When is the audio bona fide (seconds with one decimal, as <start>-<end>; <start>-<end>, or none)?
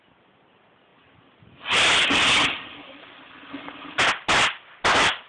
0.0-5.3